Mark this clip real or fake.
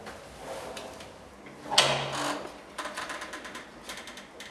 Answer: real